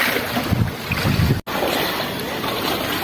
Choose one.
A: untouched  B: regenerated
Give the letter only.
A